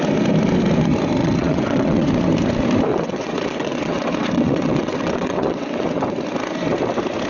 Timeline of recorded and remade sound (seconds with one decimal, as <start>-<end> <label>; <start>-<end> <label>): 0.0-1.2 recorded; 1.2-2.1 remade; 2.1-2.9 recorded; 2.9-6.1 remade; 6.1-7.3 recorded